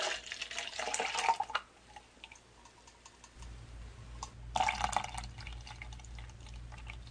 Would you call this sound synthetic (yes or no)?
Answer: no